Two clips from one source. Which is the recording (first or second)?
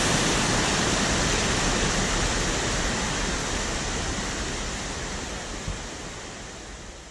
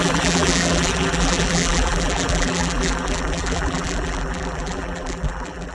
first